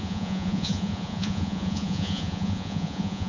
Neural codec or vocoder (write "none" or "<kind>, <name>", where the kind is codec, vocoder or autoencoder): vocoder, Vocos